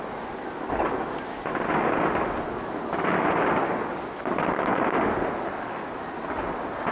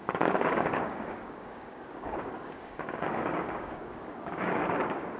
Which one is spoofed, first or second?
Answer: second